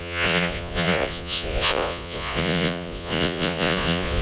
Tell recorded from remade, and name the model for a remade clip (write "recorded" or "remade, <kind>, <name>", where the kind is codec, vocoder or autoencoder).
remade, vocoder, Vocos